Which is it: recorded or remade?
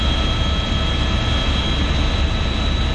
recorded